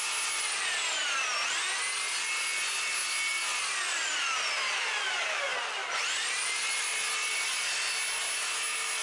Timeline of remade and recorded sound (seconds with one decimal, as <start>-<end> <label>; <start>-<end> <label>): 0.0-9.0 recorded